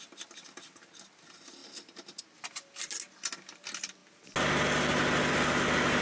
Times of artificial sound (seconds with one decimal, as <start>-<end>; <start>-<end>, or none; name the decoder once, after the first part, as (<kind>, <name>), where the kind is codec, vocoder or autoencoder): 1.6-2.2 (vocoder, BigVGAN v2)